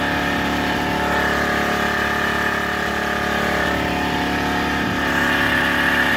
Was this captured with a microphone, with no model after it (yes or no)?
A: yes